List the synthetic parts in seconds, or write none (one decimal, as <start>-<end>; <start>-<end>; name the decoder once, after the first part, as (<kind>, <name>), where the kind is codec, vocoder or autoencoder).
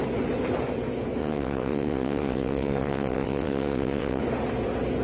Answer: 1.2-4.2 (vocoder, WaveNeXt)